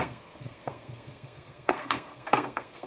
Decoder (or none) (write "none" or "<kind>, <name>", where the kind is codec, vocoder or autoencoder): codec, SNAC